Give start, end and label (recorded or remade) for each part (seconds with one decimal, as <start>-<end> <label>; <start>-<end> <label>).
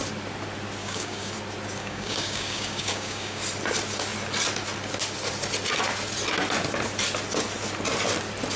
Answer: 0.0-0.8 recorded; 0.8-1.3 remade; 1.3-1.8 recorded; 1.8-3.4 remade; 3.4-8.6 recorded